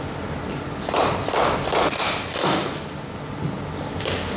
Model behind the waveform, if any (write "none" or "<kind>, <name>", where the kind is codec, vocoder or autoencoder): none